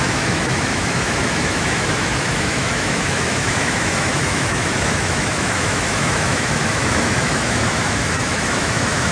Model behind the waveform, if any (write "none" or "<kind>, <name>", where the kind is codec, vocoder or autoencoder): autoencoder, DAC-VAE